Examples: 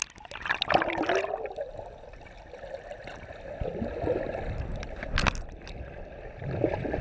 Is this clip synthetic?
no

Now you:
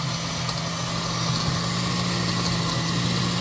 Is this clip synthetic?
no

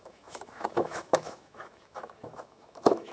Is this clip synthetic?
yes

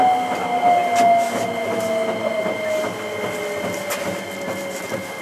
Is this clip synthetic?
no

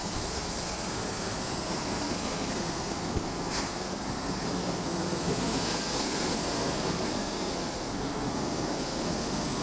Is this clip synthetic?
yes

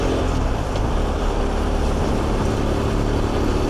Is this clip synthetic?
no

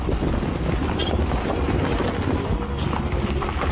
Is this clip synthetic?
no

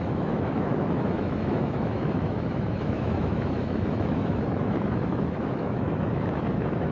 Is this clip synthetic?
yes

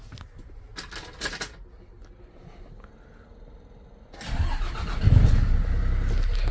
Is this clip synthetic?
no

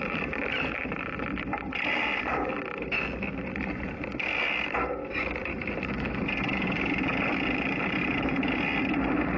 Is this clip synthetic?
no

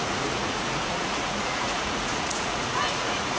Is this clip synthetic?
yes